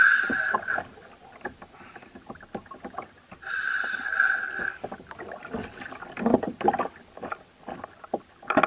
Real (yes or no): yes